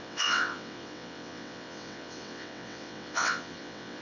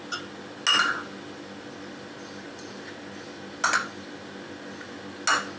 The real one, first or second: second